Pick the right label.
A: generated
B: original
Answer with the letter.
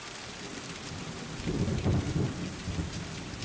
B